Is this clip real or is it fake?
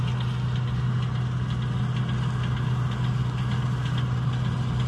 real